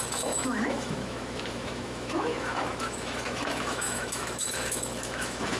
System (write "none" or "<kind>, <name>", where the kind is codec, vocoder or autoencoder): autoencoder, DAC-VAE